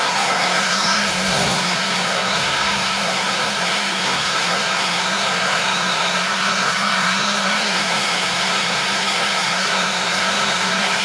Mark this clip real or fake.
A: fake